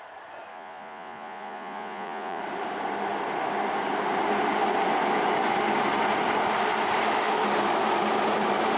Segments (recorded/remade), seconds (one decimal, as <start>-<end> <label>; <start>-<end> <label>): 0.0-0.5 recorded; 0.5-2.4 remade; 2.4-8.8 recorded